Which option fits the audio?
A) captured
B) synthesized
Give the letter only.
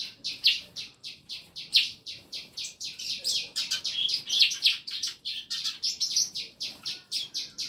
B